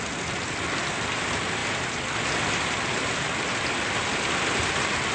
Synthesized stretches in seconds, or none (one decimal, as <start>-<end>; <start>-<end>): none